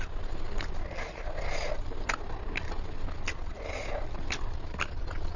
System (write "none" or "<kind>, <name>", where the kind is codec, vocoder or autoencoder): none